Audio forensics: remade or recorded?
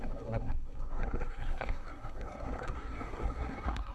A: remade